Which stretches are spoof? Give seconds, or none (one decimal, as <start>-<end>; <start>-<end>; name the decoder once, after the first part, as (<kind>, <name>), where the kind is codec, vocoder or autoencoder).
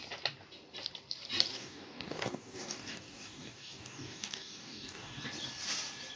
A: 1.5-5.2 (codec, DAC)